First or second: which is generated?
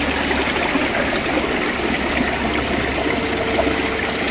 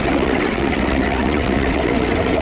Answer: second